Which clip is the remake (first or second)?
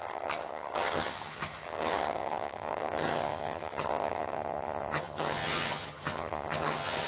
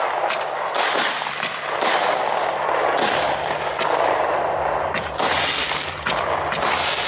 first